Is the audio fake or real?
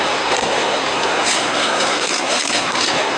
fake